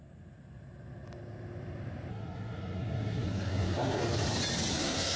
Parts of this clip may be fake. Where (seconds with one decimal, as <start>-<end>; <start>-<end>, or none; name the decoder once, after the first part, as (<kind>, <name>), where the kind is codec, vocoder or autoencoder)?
2.1-4.0 (codec, SNAC); 4.7-5.2